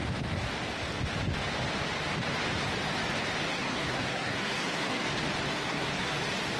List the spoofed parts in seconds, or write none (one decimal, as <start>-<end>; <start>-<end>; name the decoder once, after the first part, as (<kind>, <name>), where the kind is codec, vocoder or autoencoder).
3.5-5.1 (codec, SNAC); 5.5-6.1